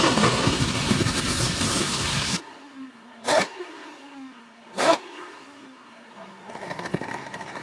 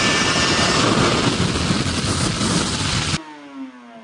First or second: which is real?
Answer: second